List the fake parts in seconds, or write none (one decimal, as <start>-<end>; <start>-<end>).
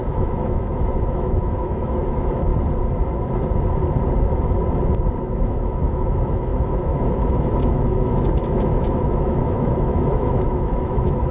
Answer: 0.0-2.5; 5.2-11.3